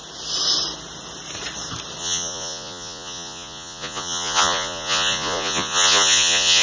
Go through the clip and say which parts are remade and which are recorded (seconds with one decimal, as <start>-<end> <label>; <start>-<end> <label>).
0.0-2.0 recorded; 2.0-6.6 remade